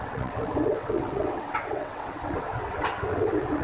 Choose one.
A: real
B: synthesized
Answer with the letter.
B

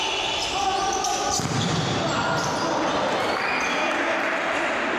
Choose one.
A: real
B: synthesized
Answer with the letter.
A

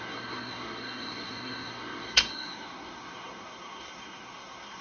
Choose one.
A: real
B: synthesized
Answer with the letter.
B